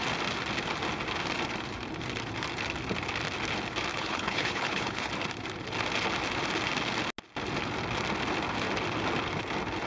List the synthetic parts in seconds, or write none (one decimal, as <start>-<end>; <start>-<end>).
3.9-5.1